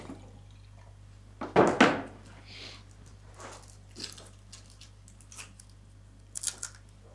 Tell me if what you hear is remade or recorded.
recorded